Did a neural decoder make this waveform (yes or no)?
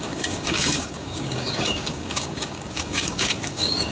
yes